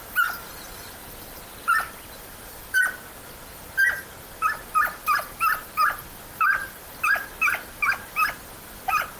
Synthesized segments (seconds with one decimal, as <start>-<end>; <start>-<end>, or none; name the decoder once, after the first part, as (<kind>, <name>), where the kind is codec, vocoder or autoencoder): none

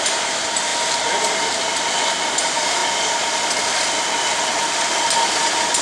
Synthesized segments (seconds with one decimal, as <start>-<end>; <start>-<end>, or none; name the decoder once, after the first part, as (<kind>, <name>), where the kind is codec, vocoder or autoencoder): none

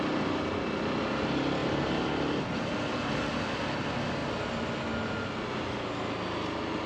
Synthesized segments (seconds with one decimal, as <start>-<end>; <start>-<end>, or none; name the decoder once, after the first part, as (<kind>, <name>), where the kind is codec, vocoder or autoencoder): none

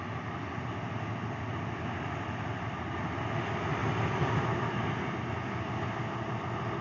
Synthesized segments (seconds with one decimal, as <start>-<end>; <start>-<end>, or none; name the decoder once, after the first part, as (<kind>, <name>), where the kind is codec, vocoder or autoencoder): none